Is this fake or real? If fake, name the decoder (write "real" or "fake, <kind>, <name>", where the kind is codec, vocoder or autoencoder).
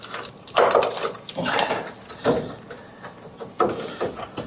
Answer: real